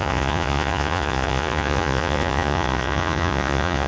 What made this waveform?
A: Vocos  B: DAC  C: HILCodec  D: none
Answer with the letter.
A